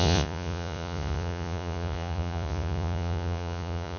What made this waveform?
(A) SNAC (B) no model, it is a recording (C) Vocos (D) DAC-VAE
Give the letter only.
C